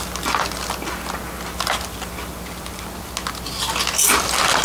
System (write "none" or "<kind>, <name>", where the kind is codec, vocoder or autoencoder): none